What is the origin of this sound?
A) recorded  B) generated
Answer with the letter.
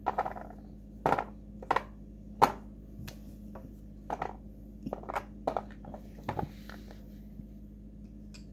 A